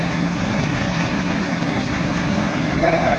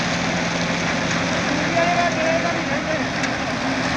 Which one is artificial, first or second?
first